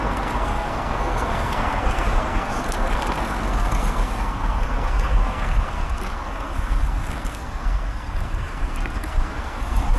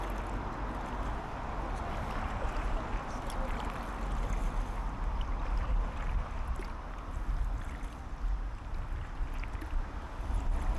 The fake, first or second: first